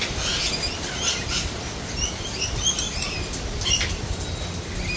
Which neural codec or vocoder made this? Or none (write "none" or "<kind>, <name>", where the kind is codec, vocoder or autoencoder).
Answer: none